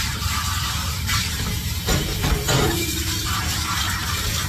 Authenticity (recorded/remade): remade